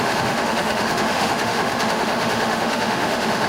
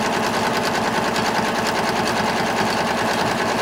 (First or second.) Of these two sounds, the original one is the second